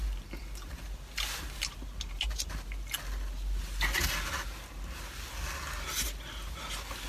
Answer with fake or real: real